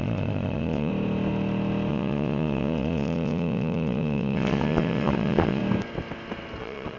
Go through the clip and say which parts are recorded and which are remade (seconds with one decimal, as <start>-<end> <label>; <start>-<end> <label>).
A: 0.0-0.9 remade; 0.9-1.9 recorded; 1.9-5.6 remade; 5.6-6.6 recorded; 6.6-7.0 remade